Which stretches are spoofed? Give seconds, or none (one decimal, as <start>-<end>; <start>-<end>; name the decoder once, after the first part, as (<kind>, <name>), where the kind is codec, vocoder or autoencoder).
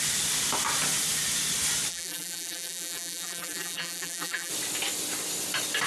1.9-4.5 (vocoder, BigVGAN v2)